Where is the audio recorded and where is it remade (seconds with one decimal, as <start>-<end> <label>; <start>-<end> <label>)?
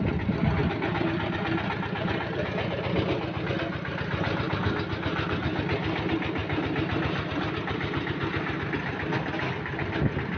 0.0-10.4 recorded